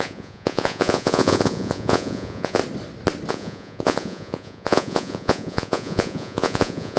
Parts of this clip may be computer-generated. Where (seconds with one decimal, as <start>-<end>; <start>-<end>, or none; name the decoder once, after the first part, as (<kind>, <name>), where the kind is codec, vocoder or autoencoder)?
0.0-2.6 (vocoder, Vocos); 3.3-7.0